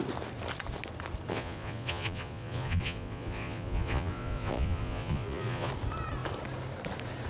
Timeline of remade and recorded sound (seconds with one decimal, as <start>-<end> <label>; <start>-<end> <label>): 0.0-1.3 recorded; 1.3-5.7 remade; 5.7-7.3 recorded